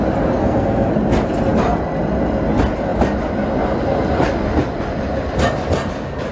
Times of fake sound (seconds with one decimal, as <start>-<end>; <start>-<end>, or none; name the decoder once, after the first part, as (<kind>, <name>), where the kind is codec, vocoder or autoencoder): 0.4-0.9 (codec, SNAC)